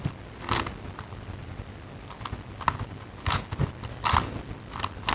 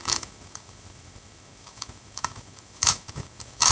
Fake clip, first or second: second